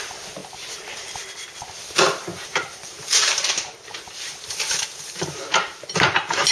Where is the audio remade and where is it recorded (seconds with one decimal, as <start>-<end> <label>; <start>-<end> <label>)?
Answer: 0.0-2.3 recorded; 2.3-6.5 remade